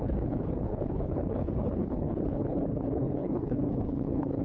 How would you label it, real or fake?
fake